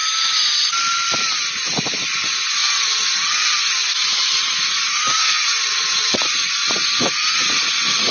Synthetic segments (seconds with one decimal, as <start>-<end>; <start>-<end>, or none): 2.2-8.1